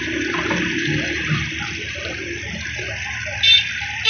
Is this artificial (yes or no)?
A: no